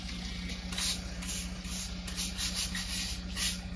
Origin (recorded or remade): recorded